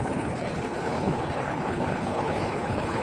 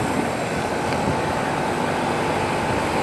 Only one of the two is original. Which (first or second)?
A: second